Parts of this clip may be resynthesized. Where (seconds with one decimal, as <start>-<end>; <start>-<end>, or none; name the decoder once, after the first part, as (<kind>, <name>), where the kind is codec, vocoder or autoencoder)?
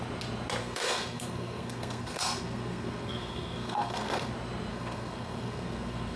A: 0.6-4.3 (codec, SNAC); 4.7-6.2